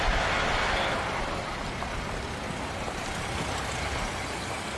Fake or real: real